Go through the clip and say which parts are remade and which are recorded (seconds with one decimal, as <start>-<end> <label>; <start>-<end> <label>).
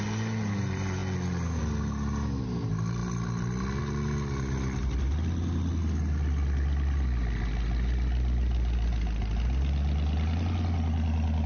0.0-11.5 recorded